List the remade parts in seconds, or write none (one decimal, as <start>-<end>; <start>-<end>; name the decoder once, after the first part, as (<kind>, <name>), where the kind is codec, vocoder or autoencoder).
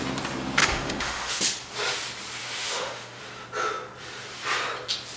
0.6-1.4 (autoencoder, DAC-VAE); 2.4-3.2